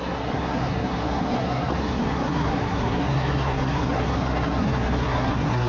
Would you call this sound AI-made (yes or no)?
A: yes